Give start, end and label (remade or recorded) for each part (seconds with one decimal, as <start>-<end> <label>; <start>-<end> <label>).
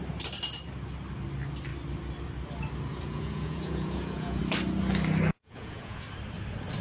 0.0-2.9 recorded; 2.9-4.4 remade; 4.4-5.4 recorded; 5.4-6.0 remade; 6.0-6.8 recorded